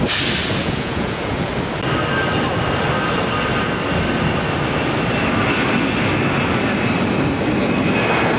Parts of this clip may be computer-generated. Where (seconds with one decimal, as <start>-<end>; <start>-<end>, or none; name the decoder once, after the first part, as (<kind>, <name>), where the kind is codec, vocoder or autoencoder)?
0.6-1.5 (vocoder, Vocos)